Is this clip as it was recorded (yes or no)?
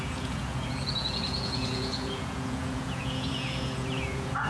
no